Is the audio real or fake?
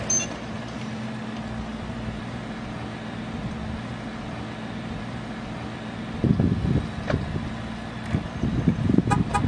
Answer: real